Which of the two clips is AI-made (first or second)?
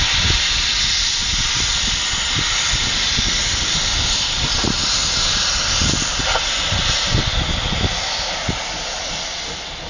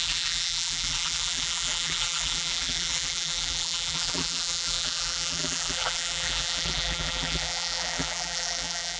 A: second